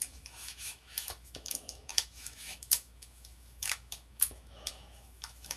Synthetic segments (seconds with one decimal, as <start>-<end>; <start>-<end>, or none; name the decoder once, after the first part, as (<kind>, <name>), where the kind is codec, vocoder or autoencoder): 0.0-5.6 (autoencoder, DAC-VAE)